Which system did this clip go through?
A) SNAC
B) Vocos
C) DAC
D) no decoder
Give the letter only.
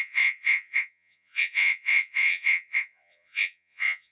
B